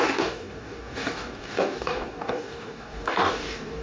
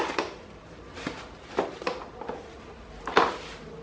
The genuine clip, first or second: second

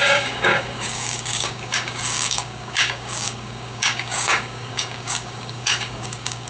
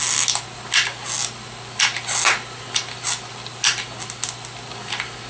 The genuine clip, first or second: second